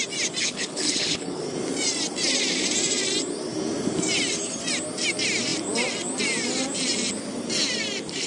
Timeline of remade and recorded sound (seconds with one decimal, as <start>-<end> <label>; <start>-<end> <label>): 0.0-0.4 recorded; 0.4-1.4 remade; 1.4-8.3 recorded